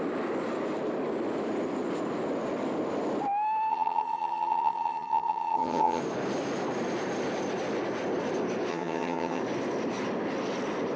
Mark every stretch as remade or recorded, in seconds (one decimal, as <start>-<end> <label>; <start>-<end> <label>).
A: 0.0-3.7 recorded; 3.7-6.0 remade; 6.0-8.7 recorded; 8.7-9.4 remade; 9.4-11.0 recorded